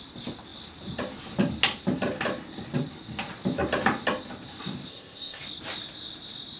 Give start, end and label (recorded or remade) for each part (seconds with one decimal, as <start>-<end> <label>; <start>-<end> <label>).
0.0-4.9 recorded; 4.9-5.4 remade; 5.4-6.6 recorded

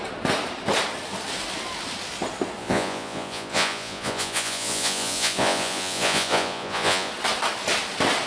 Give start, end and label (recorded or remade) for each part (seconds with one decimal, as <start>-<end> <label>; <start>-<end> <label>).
0.0-2.6 recorded; 2.6-7.1 remade; 7.1-8.3 recorded

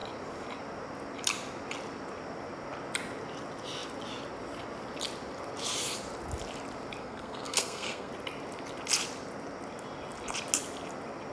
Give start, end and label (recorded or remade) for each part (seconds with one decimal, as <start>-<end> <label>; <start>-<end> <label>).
0.0-7.0 recorded; 7.0-8.1 remade; 8.1-11.3 recorded

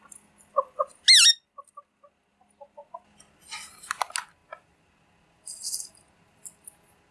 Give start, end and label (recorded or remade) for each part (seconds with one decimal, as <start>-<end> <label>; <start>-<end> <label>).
0.0-7.1 recorded

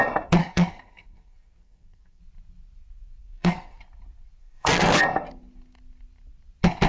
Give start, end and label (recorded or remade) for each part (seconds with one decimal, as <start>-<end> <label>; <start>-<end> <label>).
0.0-0.4 recorded; 0.4-2.2 remade; 2.2-3.2 recorded; 3.2-3.8 remade; 3.8-4.4 recorded; 4.4-5.0 remade; 5.0-6.9 recorded